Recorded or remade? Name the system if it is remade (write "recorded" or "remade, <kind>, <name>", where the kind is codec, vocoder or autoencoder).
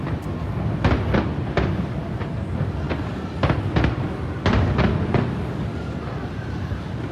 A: recorded